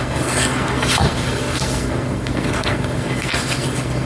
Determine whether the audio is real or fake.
fake